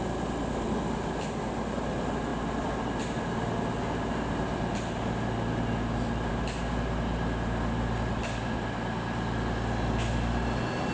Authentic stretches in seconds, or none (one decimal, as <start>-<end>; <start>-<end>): 0.0-10.9